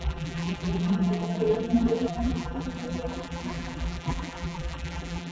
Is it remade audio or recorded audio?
remade